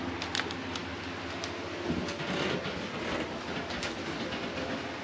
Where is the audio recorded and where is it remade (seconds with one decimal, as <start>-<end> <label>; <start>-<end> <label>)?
0.0-5.0 recorded